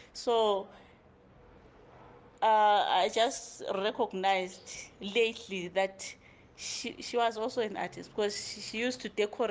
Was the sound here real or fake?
real